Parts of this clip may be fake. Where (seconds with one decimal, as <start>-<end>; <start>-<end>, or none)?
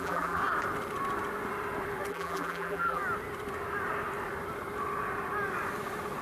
0.0-0.4; 2.1-3.0